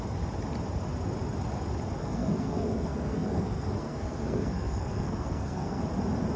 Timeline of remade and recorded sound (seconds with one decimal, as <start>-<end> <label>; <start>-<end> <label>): 0.0-2.0 recorded; 2.0-5.8 remade; 5.8-6.4 recorded